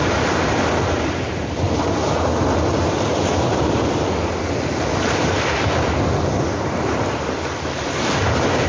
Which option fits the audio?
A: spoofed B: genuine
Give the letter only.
B